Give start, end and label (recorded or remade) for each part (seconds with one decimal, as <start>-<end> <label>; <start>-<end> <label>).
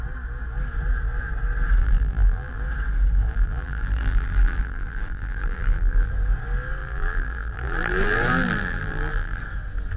0.0-1.8 recorded; 1.8-2.6 remade; 2.6-3.3 recorded; 3.3-6.1 remade; 6.1-6.8 recorded; 6.8-9.4 remade; 9.4-10.0 recorded